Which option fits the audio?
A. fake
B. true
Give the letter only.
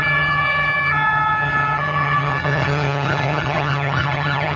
A